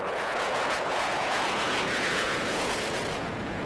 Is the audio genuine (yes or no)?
no